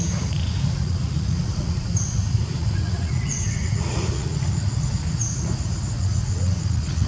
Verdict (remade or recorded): remade